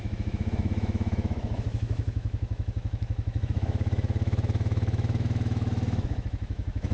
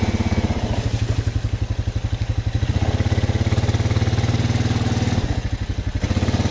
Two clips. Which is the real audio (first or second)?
second